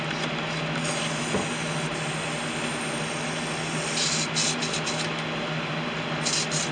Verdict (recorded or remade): recorded